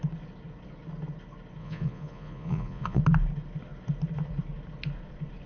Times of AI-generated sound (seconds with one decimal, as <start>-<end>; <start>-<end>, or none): 1.6-3.0